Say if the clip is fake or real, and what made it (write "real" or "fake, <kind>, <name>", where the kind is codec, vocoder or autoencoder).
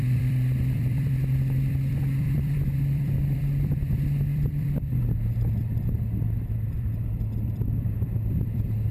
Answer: fake, vocoder, BigVGAN v2